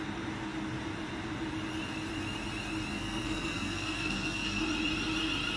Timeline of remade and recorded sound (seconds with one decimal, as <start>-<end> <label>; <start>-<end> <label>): 0.0-2.9 recorded; 2.9-4.6 remade; 4.6-5.6 recorded